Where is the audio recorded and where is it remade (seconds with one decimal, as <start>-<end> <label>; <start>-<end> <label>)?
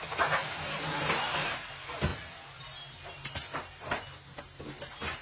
0.0-5.2 recorded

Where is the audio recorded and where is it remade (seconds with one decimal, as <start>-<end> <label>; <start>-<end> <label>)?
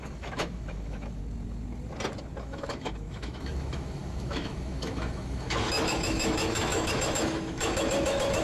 0.0-1.2 remade; 1.2-2.4 recorded; 2.4-8.4 remade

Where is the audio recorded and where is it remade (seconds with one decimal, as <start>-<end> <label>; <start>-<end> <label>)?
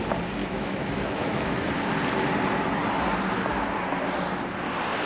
0.0-0.4 recorded; 0.4-1.7 remade; 1.7-5.1 recorded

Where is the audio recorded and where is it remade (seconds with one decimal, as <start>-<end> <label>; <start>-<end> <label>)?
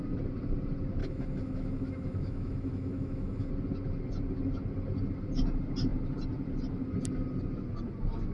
0.0-1.0 recorded; 1.0-3.5 remade; 3.5-8.3 recorded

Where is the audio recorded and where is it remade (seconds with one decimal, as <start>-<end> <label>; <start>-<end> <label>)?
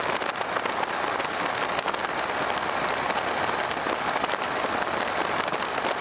0.0-6.0 recorded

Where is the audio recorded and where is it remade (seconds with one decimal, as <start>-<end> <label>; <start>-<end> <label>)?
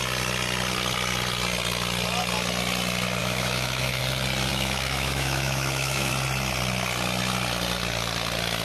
0.0-3.2 recorded; 3.2-4.0 remade; 4.0-4.5 recorded; 4.5-6.1 remade; 6.1-8.6 recorded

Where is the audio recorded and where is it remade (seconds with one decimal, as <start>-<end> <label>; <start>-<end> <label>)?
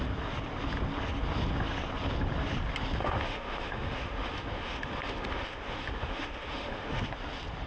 0.0-3.0 recorded; 3.0-7.0 remade; 7.0-7.7 recorded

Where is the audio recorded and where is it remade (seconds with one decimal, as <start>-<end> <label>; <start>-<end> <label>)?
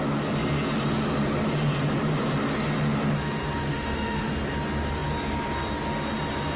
0.0-3.7 recorded; 3.7-4.3 remade; 4.3-6.6 recorded